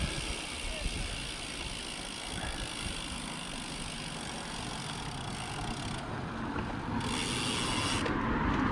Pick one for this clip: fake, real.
real